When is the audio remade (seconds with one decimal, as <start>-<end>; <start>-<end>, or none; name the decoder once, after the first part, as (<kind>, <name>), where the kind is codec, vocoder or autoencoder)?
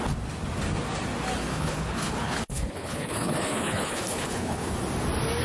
1.5-4.7 (codec, HILCodec)